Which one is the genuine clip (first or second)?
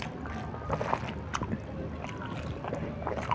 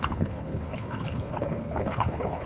first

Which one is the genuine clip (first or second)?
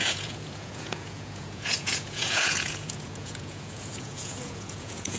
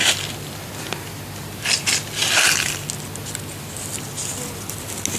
second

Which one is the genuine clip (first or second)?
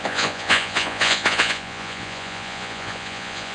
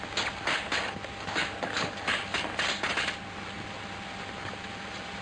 second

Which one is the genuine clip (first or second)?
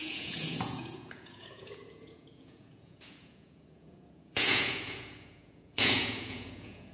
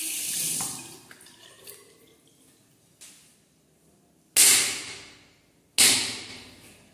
second